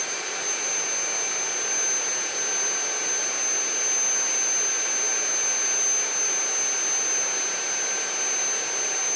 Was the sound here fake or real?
real